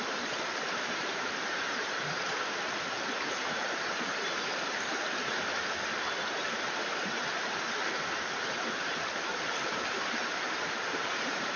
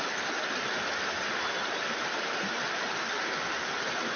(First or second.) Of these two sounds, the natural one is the second